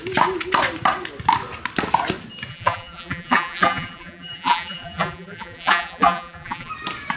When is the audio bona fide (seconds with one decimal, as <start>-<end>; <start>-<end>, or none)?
0.0-2.5; 6.7-7.2